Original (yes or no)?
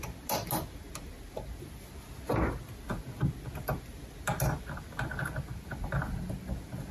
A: yes